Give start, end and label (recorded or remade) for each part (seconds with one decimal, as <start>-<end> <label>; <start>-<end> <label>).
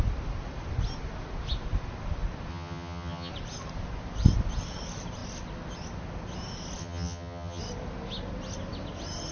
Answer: 0.0-2.5 recorded; 2.5-3.3 remade; 3.3-6.8 recorded; 6.8-7.6 remade; 7.6-9.3 recorded